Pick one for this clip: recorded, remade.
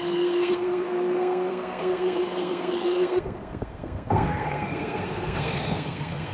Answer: remade